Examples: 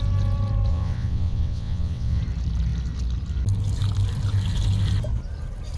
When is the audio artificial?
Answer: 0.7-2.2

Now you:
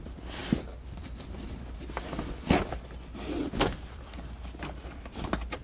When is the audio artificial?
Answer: none

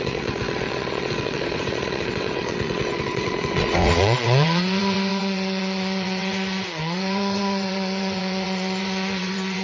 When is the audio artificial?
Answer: 0.0-9.6

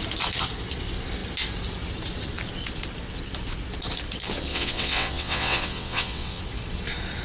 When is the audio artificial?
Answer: 4.5-6.4

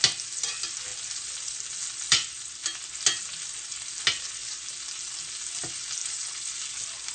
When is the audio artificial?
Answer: none